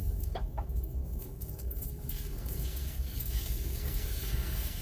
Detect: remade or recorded remade